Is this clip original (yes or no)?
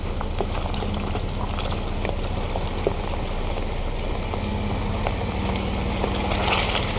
yes